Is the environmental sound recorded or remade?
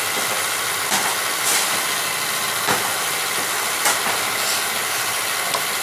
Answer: recorded